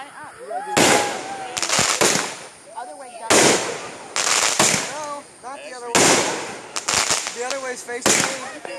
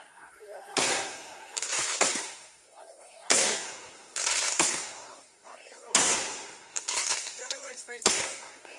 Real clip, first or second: first